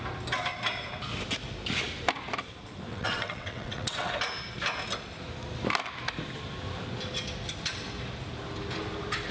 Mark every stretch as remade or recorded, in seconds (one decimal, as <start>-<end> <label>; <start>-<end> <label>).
0.0-2.9 recorded; 2.9-4.1 remade; 4.1-9.3 recorded